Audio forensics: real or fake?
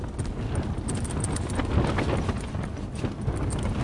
real